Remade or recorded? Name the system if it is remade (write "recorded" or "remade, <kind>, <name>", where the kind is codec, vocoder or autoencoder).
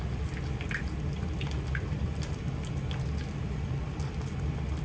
recorded